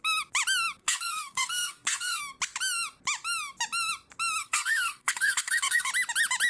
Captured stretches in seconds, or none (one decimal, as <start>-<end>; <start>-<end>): 0.0-0.8; 2.2-4.4; 5.9-6.5